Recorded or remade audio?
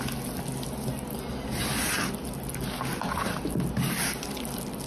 recorded